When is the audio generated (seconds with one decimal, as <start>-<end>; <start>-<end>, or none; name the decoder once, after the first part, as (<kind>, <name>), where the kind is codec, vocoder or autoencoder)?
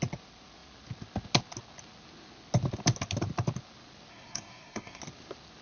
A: 4.1-5.0 (codec, SNAC)